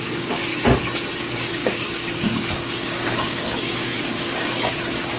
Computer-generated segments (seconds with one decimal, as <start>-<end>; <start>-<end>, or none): 0.0-0.5; 1.2-5.2